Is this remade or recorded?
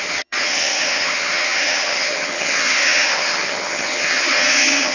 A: remade